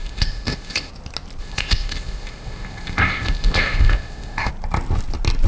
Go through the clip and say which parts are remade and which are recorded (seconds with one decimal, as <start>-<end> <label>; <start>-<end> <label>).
0.0-0.9 remade; 0.9-1.4 recorded; 1.4-4.5 remade; 4.5-5.5 recorded